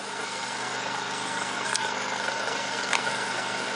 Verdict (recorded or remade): remade